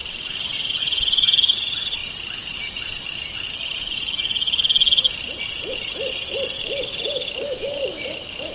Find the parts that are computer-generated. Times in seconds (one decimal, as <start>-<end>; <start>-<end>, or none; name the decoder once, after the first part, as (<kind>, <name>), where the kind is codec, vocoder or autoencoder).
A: 0.0-2.0 (vocoder, BigVGAN v2); 5.9-8.5